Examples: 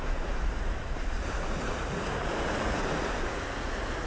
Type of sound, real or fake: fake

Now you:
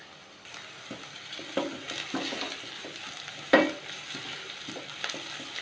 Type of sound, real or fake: real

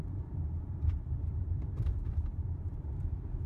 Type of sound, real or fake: fake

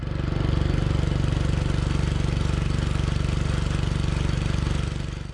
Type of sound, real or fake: real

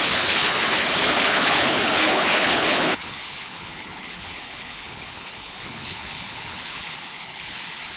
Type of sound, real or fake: fake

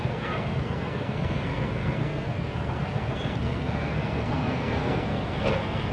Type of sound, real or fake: fake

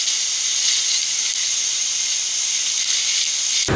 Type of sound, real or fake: real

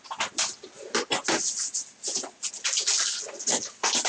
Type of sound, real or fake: real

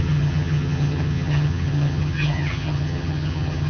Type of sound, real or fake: fake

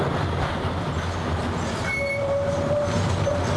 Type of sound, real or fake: real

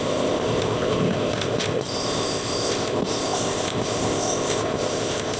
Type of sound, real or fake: fake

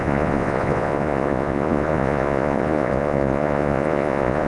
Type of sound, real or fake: fake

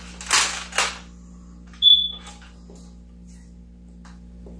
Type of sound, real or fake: real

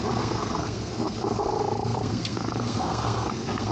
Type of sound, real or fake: fake